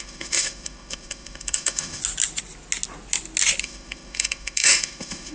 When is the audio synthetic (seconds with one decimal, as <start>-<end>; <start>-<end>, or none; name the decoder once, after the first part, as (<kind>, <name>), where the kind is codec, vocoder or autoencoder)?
0.0-2.0 (autoencoder, DAC-VAE); 3.6-5.3